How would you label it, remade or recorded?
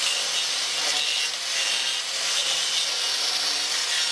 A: recorded